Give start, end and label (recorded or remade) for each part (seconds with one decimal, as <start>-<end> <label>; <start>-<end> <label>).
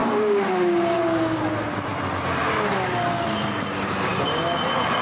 0.0-1.4 remade; 1.4-5.0 recorded